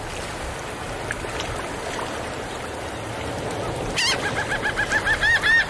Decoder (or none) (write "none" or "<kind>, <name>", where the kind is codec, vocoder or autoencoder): none